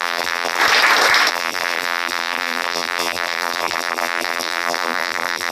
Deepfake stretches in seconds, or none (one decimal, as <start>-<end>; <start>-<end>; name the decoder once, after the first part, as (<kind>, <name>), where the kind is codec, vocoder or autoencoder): 0.0-0.6 (vocoder, BigVGAN v2); 1.3-5.5